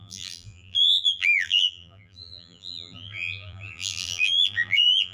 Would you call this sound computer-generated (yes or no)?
yes